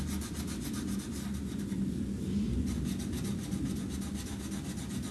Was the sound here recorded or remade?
recorded